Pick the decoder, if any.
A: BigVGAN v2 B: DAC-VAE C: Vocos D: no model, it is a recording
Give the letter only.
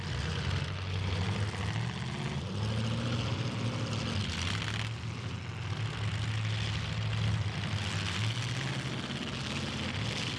D